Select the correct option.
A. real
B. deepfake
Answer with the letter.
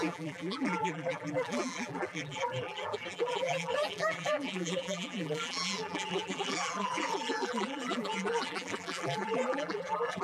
B